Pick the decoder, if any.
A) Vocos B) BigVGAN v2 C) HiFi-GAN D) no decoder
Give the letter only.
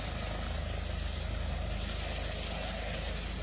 D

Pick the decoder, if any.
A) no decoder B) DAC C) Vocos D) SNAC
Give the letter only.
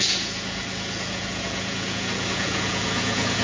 C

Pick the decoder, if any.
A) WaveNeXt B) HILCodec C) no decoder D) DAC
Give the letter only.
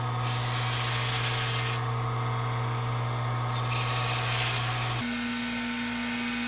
C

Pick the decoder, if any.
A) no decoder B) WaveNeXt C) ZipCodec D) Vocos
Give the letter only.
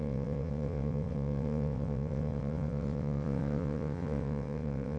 B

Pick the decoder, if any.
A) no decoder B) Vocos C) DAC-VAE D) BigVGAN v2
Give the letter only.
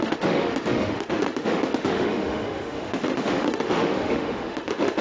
C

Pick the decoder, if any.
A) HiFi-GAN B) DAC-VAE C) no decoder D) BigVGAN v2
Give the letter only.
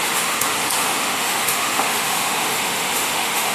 B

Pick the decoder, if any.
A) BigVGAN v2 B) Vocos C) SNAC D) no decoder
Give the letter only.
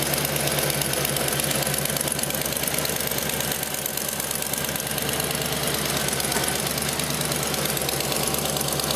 D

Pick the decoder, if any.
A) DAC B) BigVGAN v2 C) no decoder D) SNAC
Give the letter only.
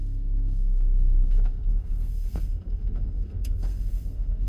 D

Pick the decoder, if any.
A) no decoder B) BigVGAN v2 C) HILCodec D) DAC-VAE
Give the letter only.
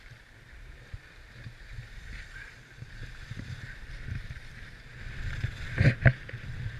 A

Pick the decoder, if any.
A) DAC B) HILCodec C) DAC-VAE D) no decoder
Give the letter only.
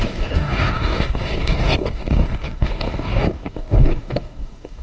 A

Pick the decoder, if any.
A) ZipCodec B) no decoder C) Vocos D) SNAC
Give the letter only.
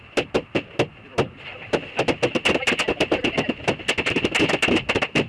B